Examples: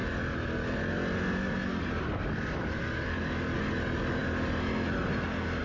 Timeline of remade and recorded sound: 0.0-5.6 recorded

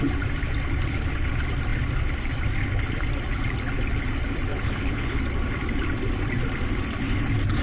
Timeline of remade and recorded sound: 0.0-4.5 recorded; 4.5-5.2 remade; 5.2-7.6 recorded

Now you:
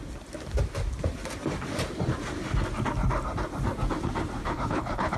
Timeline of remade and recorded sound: 0.0-4.4 recorded; 4.4-5.2 remade

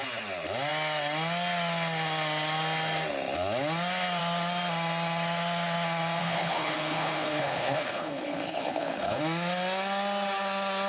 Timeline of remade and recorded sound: 0.0-6.2 recorded; 6.2-9.2 remade; 9.2-10.9 recorded